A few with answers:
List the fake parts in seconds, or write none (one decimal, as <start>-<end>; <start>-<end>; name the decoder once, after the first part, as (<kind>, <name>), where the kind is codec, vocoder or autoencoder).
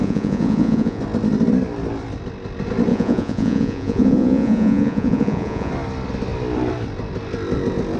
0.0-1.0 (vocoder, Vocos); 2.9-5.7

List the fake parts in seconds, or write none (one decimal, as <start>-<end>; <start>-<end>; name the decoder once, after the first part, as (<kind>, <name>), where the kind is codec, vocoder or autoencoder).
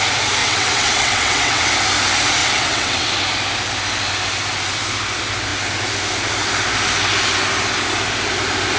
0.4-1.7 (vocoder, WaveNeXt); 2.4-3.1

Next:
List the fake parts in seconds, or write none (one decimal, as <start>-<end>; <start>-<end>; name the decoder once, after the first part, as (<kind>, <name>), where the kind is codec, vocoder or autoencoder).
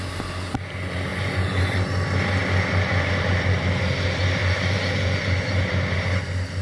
1.1-1.8 (vocoder, Vocos); 4.4-5.5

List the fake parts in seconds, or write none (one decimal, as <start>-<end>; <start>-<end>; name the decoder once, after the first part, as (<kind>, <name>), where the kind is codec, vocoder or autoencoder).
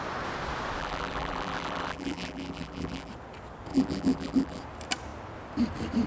0.8-3.1 (vocoder, BigVGAN v2); 3.7-4.6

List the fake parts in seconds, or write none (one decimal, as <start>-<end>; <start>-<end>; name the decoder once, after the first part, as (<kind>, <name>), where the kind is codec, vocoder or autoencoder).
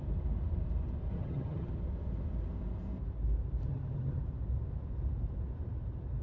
1.1-1.7 (vocoder, HiFi-GAN); 3.6-4.2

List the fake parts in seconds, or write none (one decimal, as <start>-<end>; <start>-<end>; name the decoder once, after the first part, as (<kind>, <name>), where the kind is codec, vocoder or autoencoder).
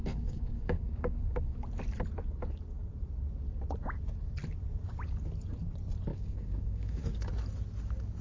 0.0-1.6 (codec, DAC); 6.1-7.0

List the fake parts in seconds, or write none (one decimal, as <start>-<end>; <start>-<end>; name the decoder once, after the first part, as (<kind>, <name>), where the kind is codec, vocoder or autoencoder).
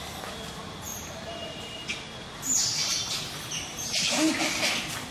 0.9-1.8 (vocoder, BigVGAN v2); 3.7-4.3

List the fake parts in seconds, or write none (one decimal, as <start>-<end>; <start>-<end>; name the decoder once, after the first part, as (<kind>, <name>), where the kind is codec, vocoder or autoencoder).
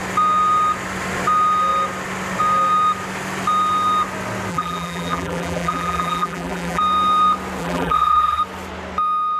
4.5-6.8 (vocoder, BigVGAN v2); 7.6-8.4